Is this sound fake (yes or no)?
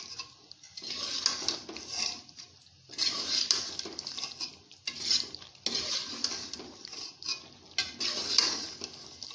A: no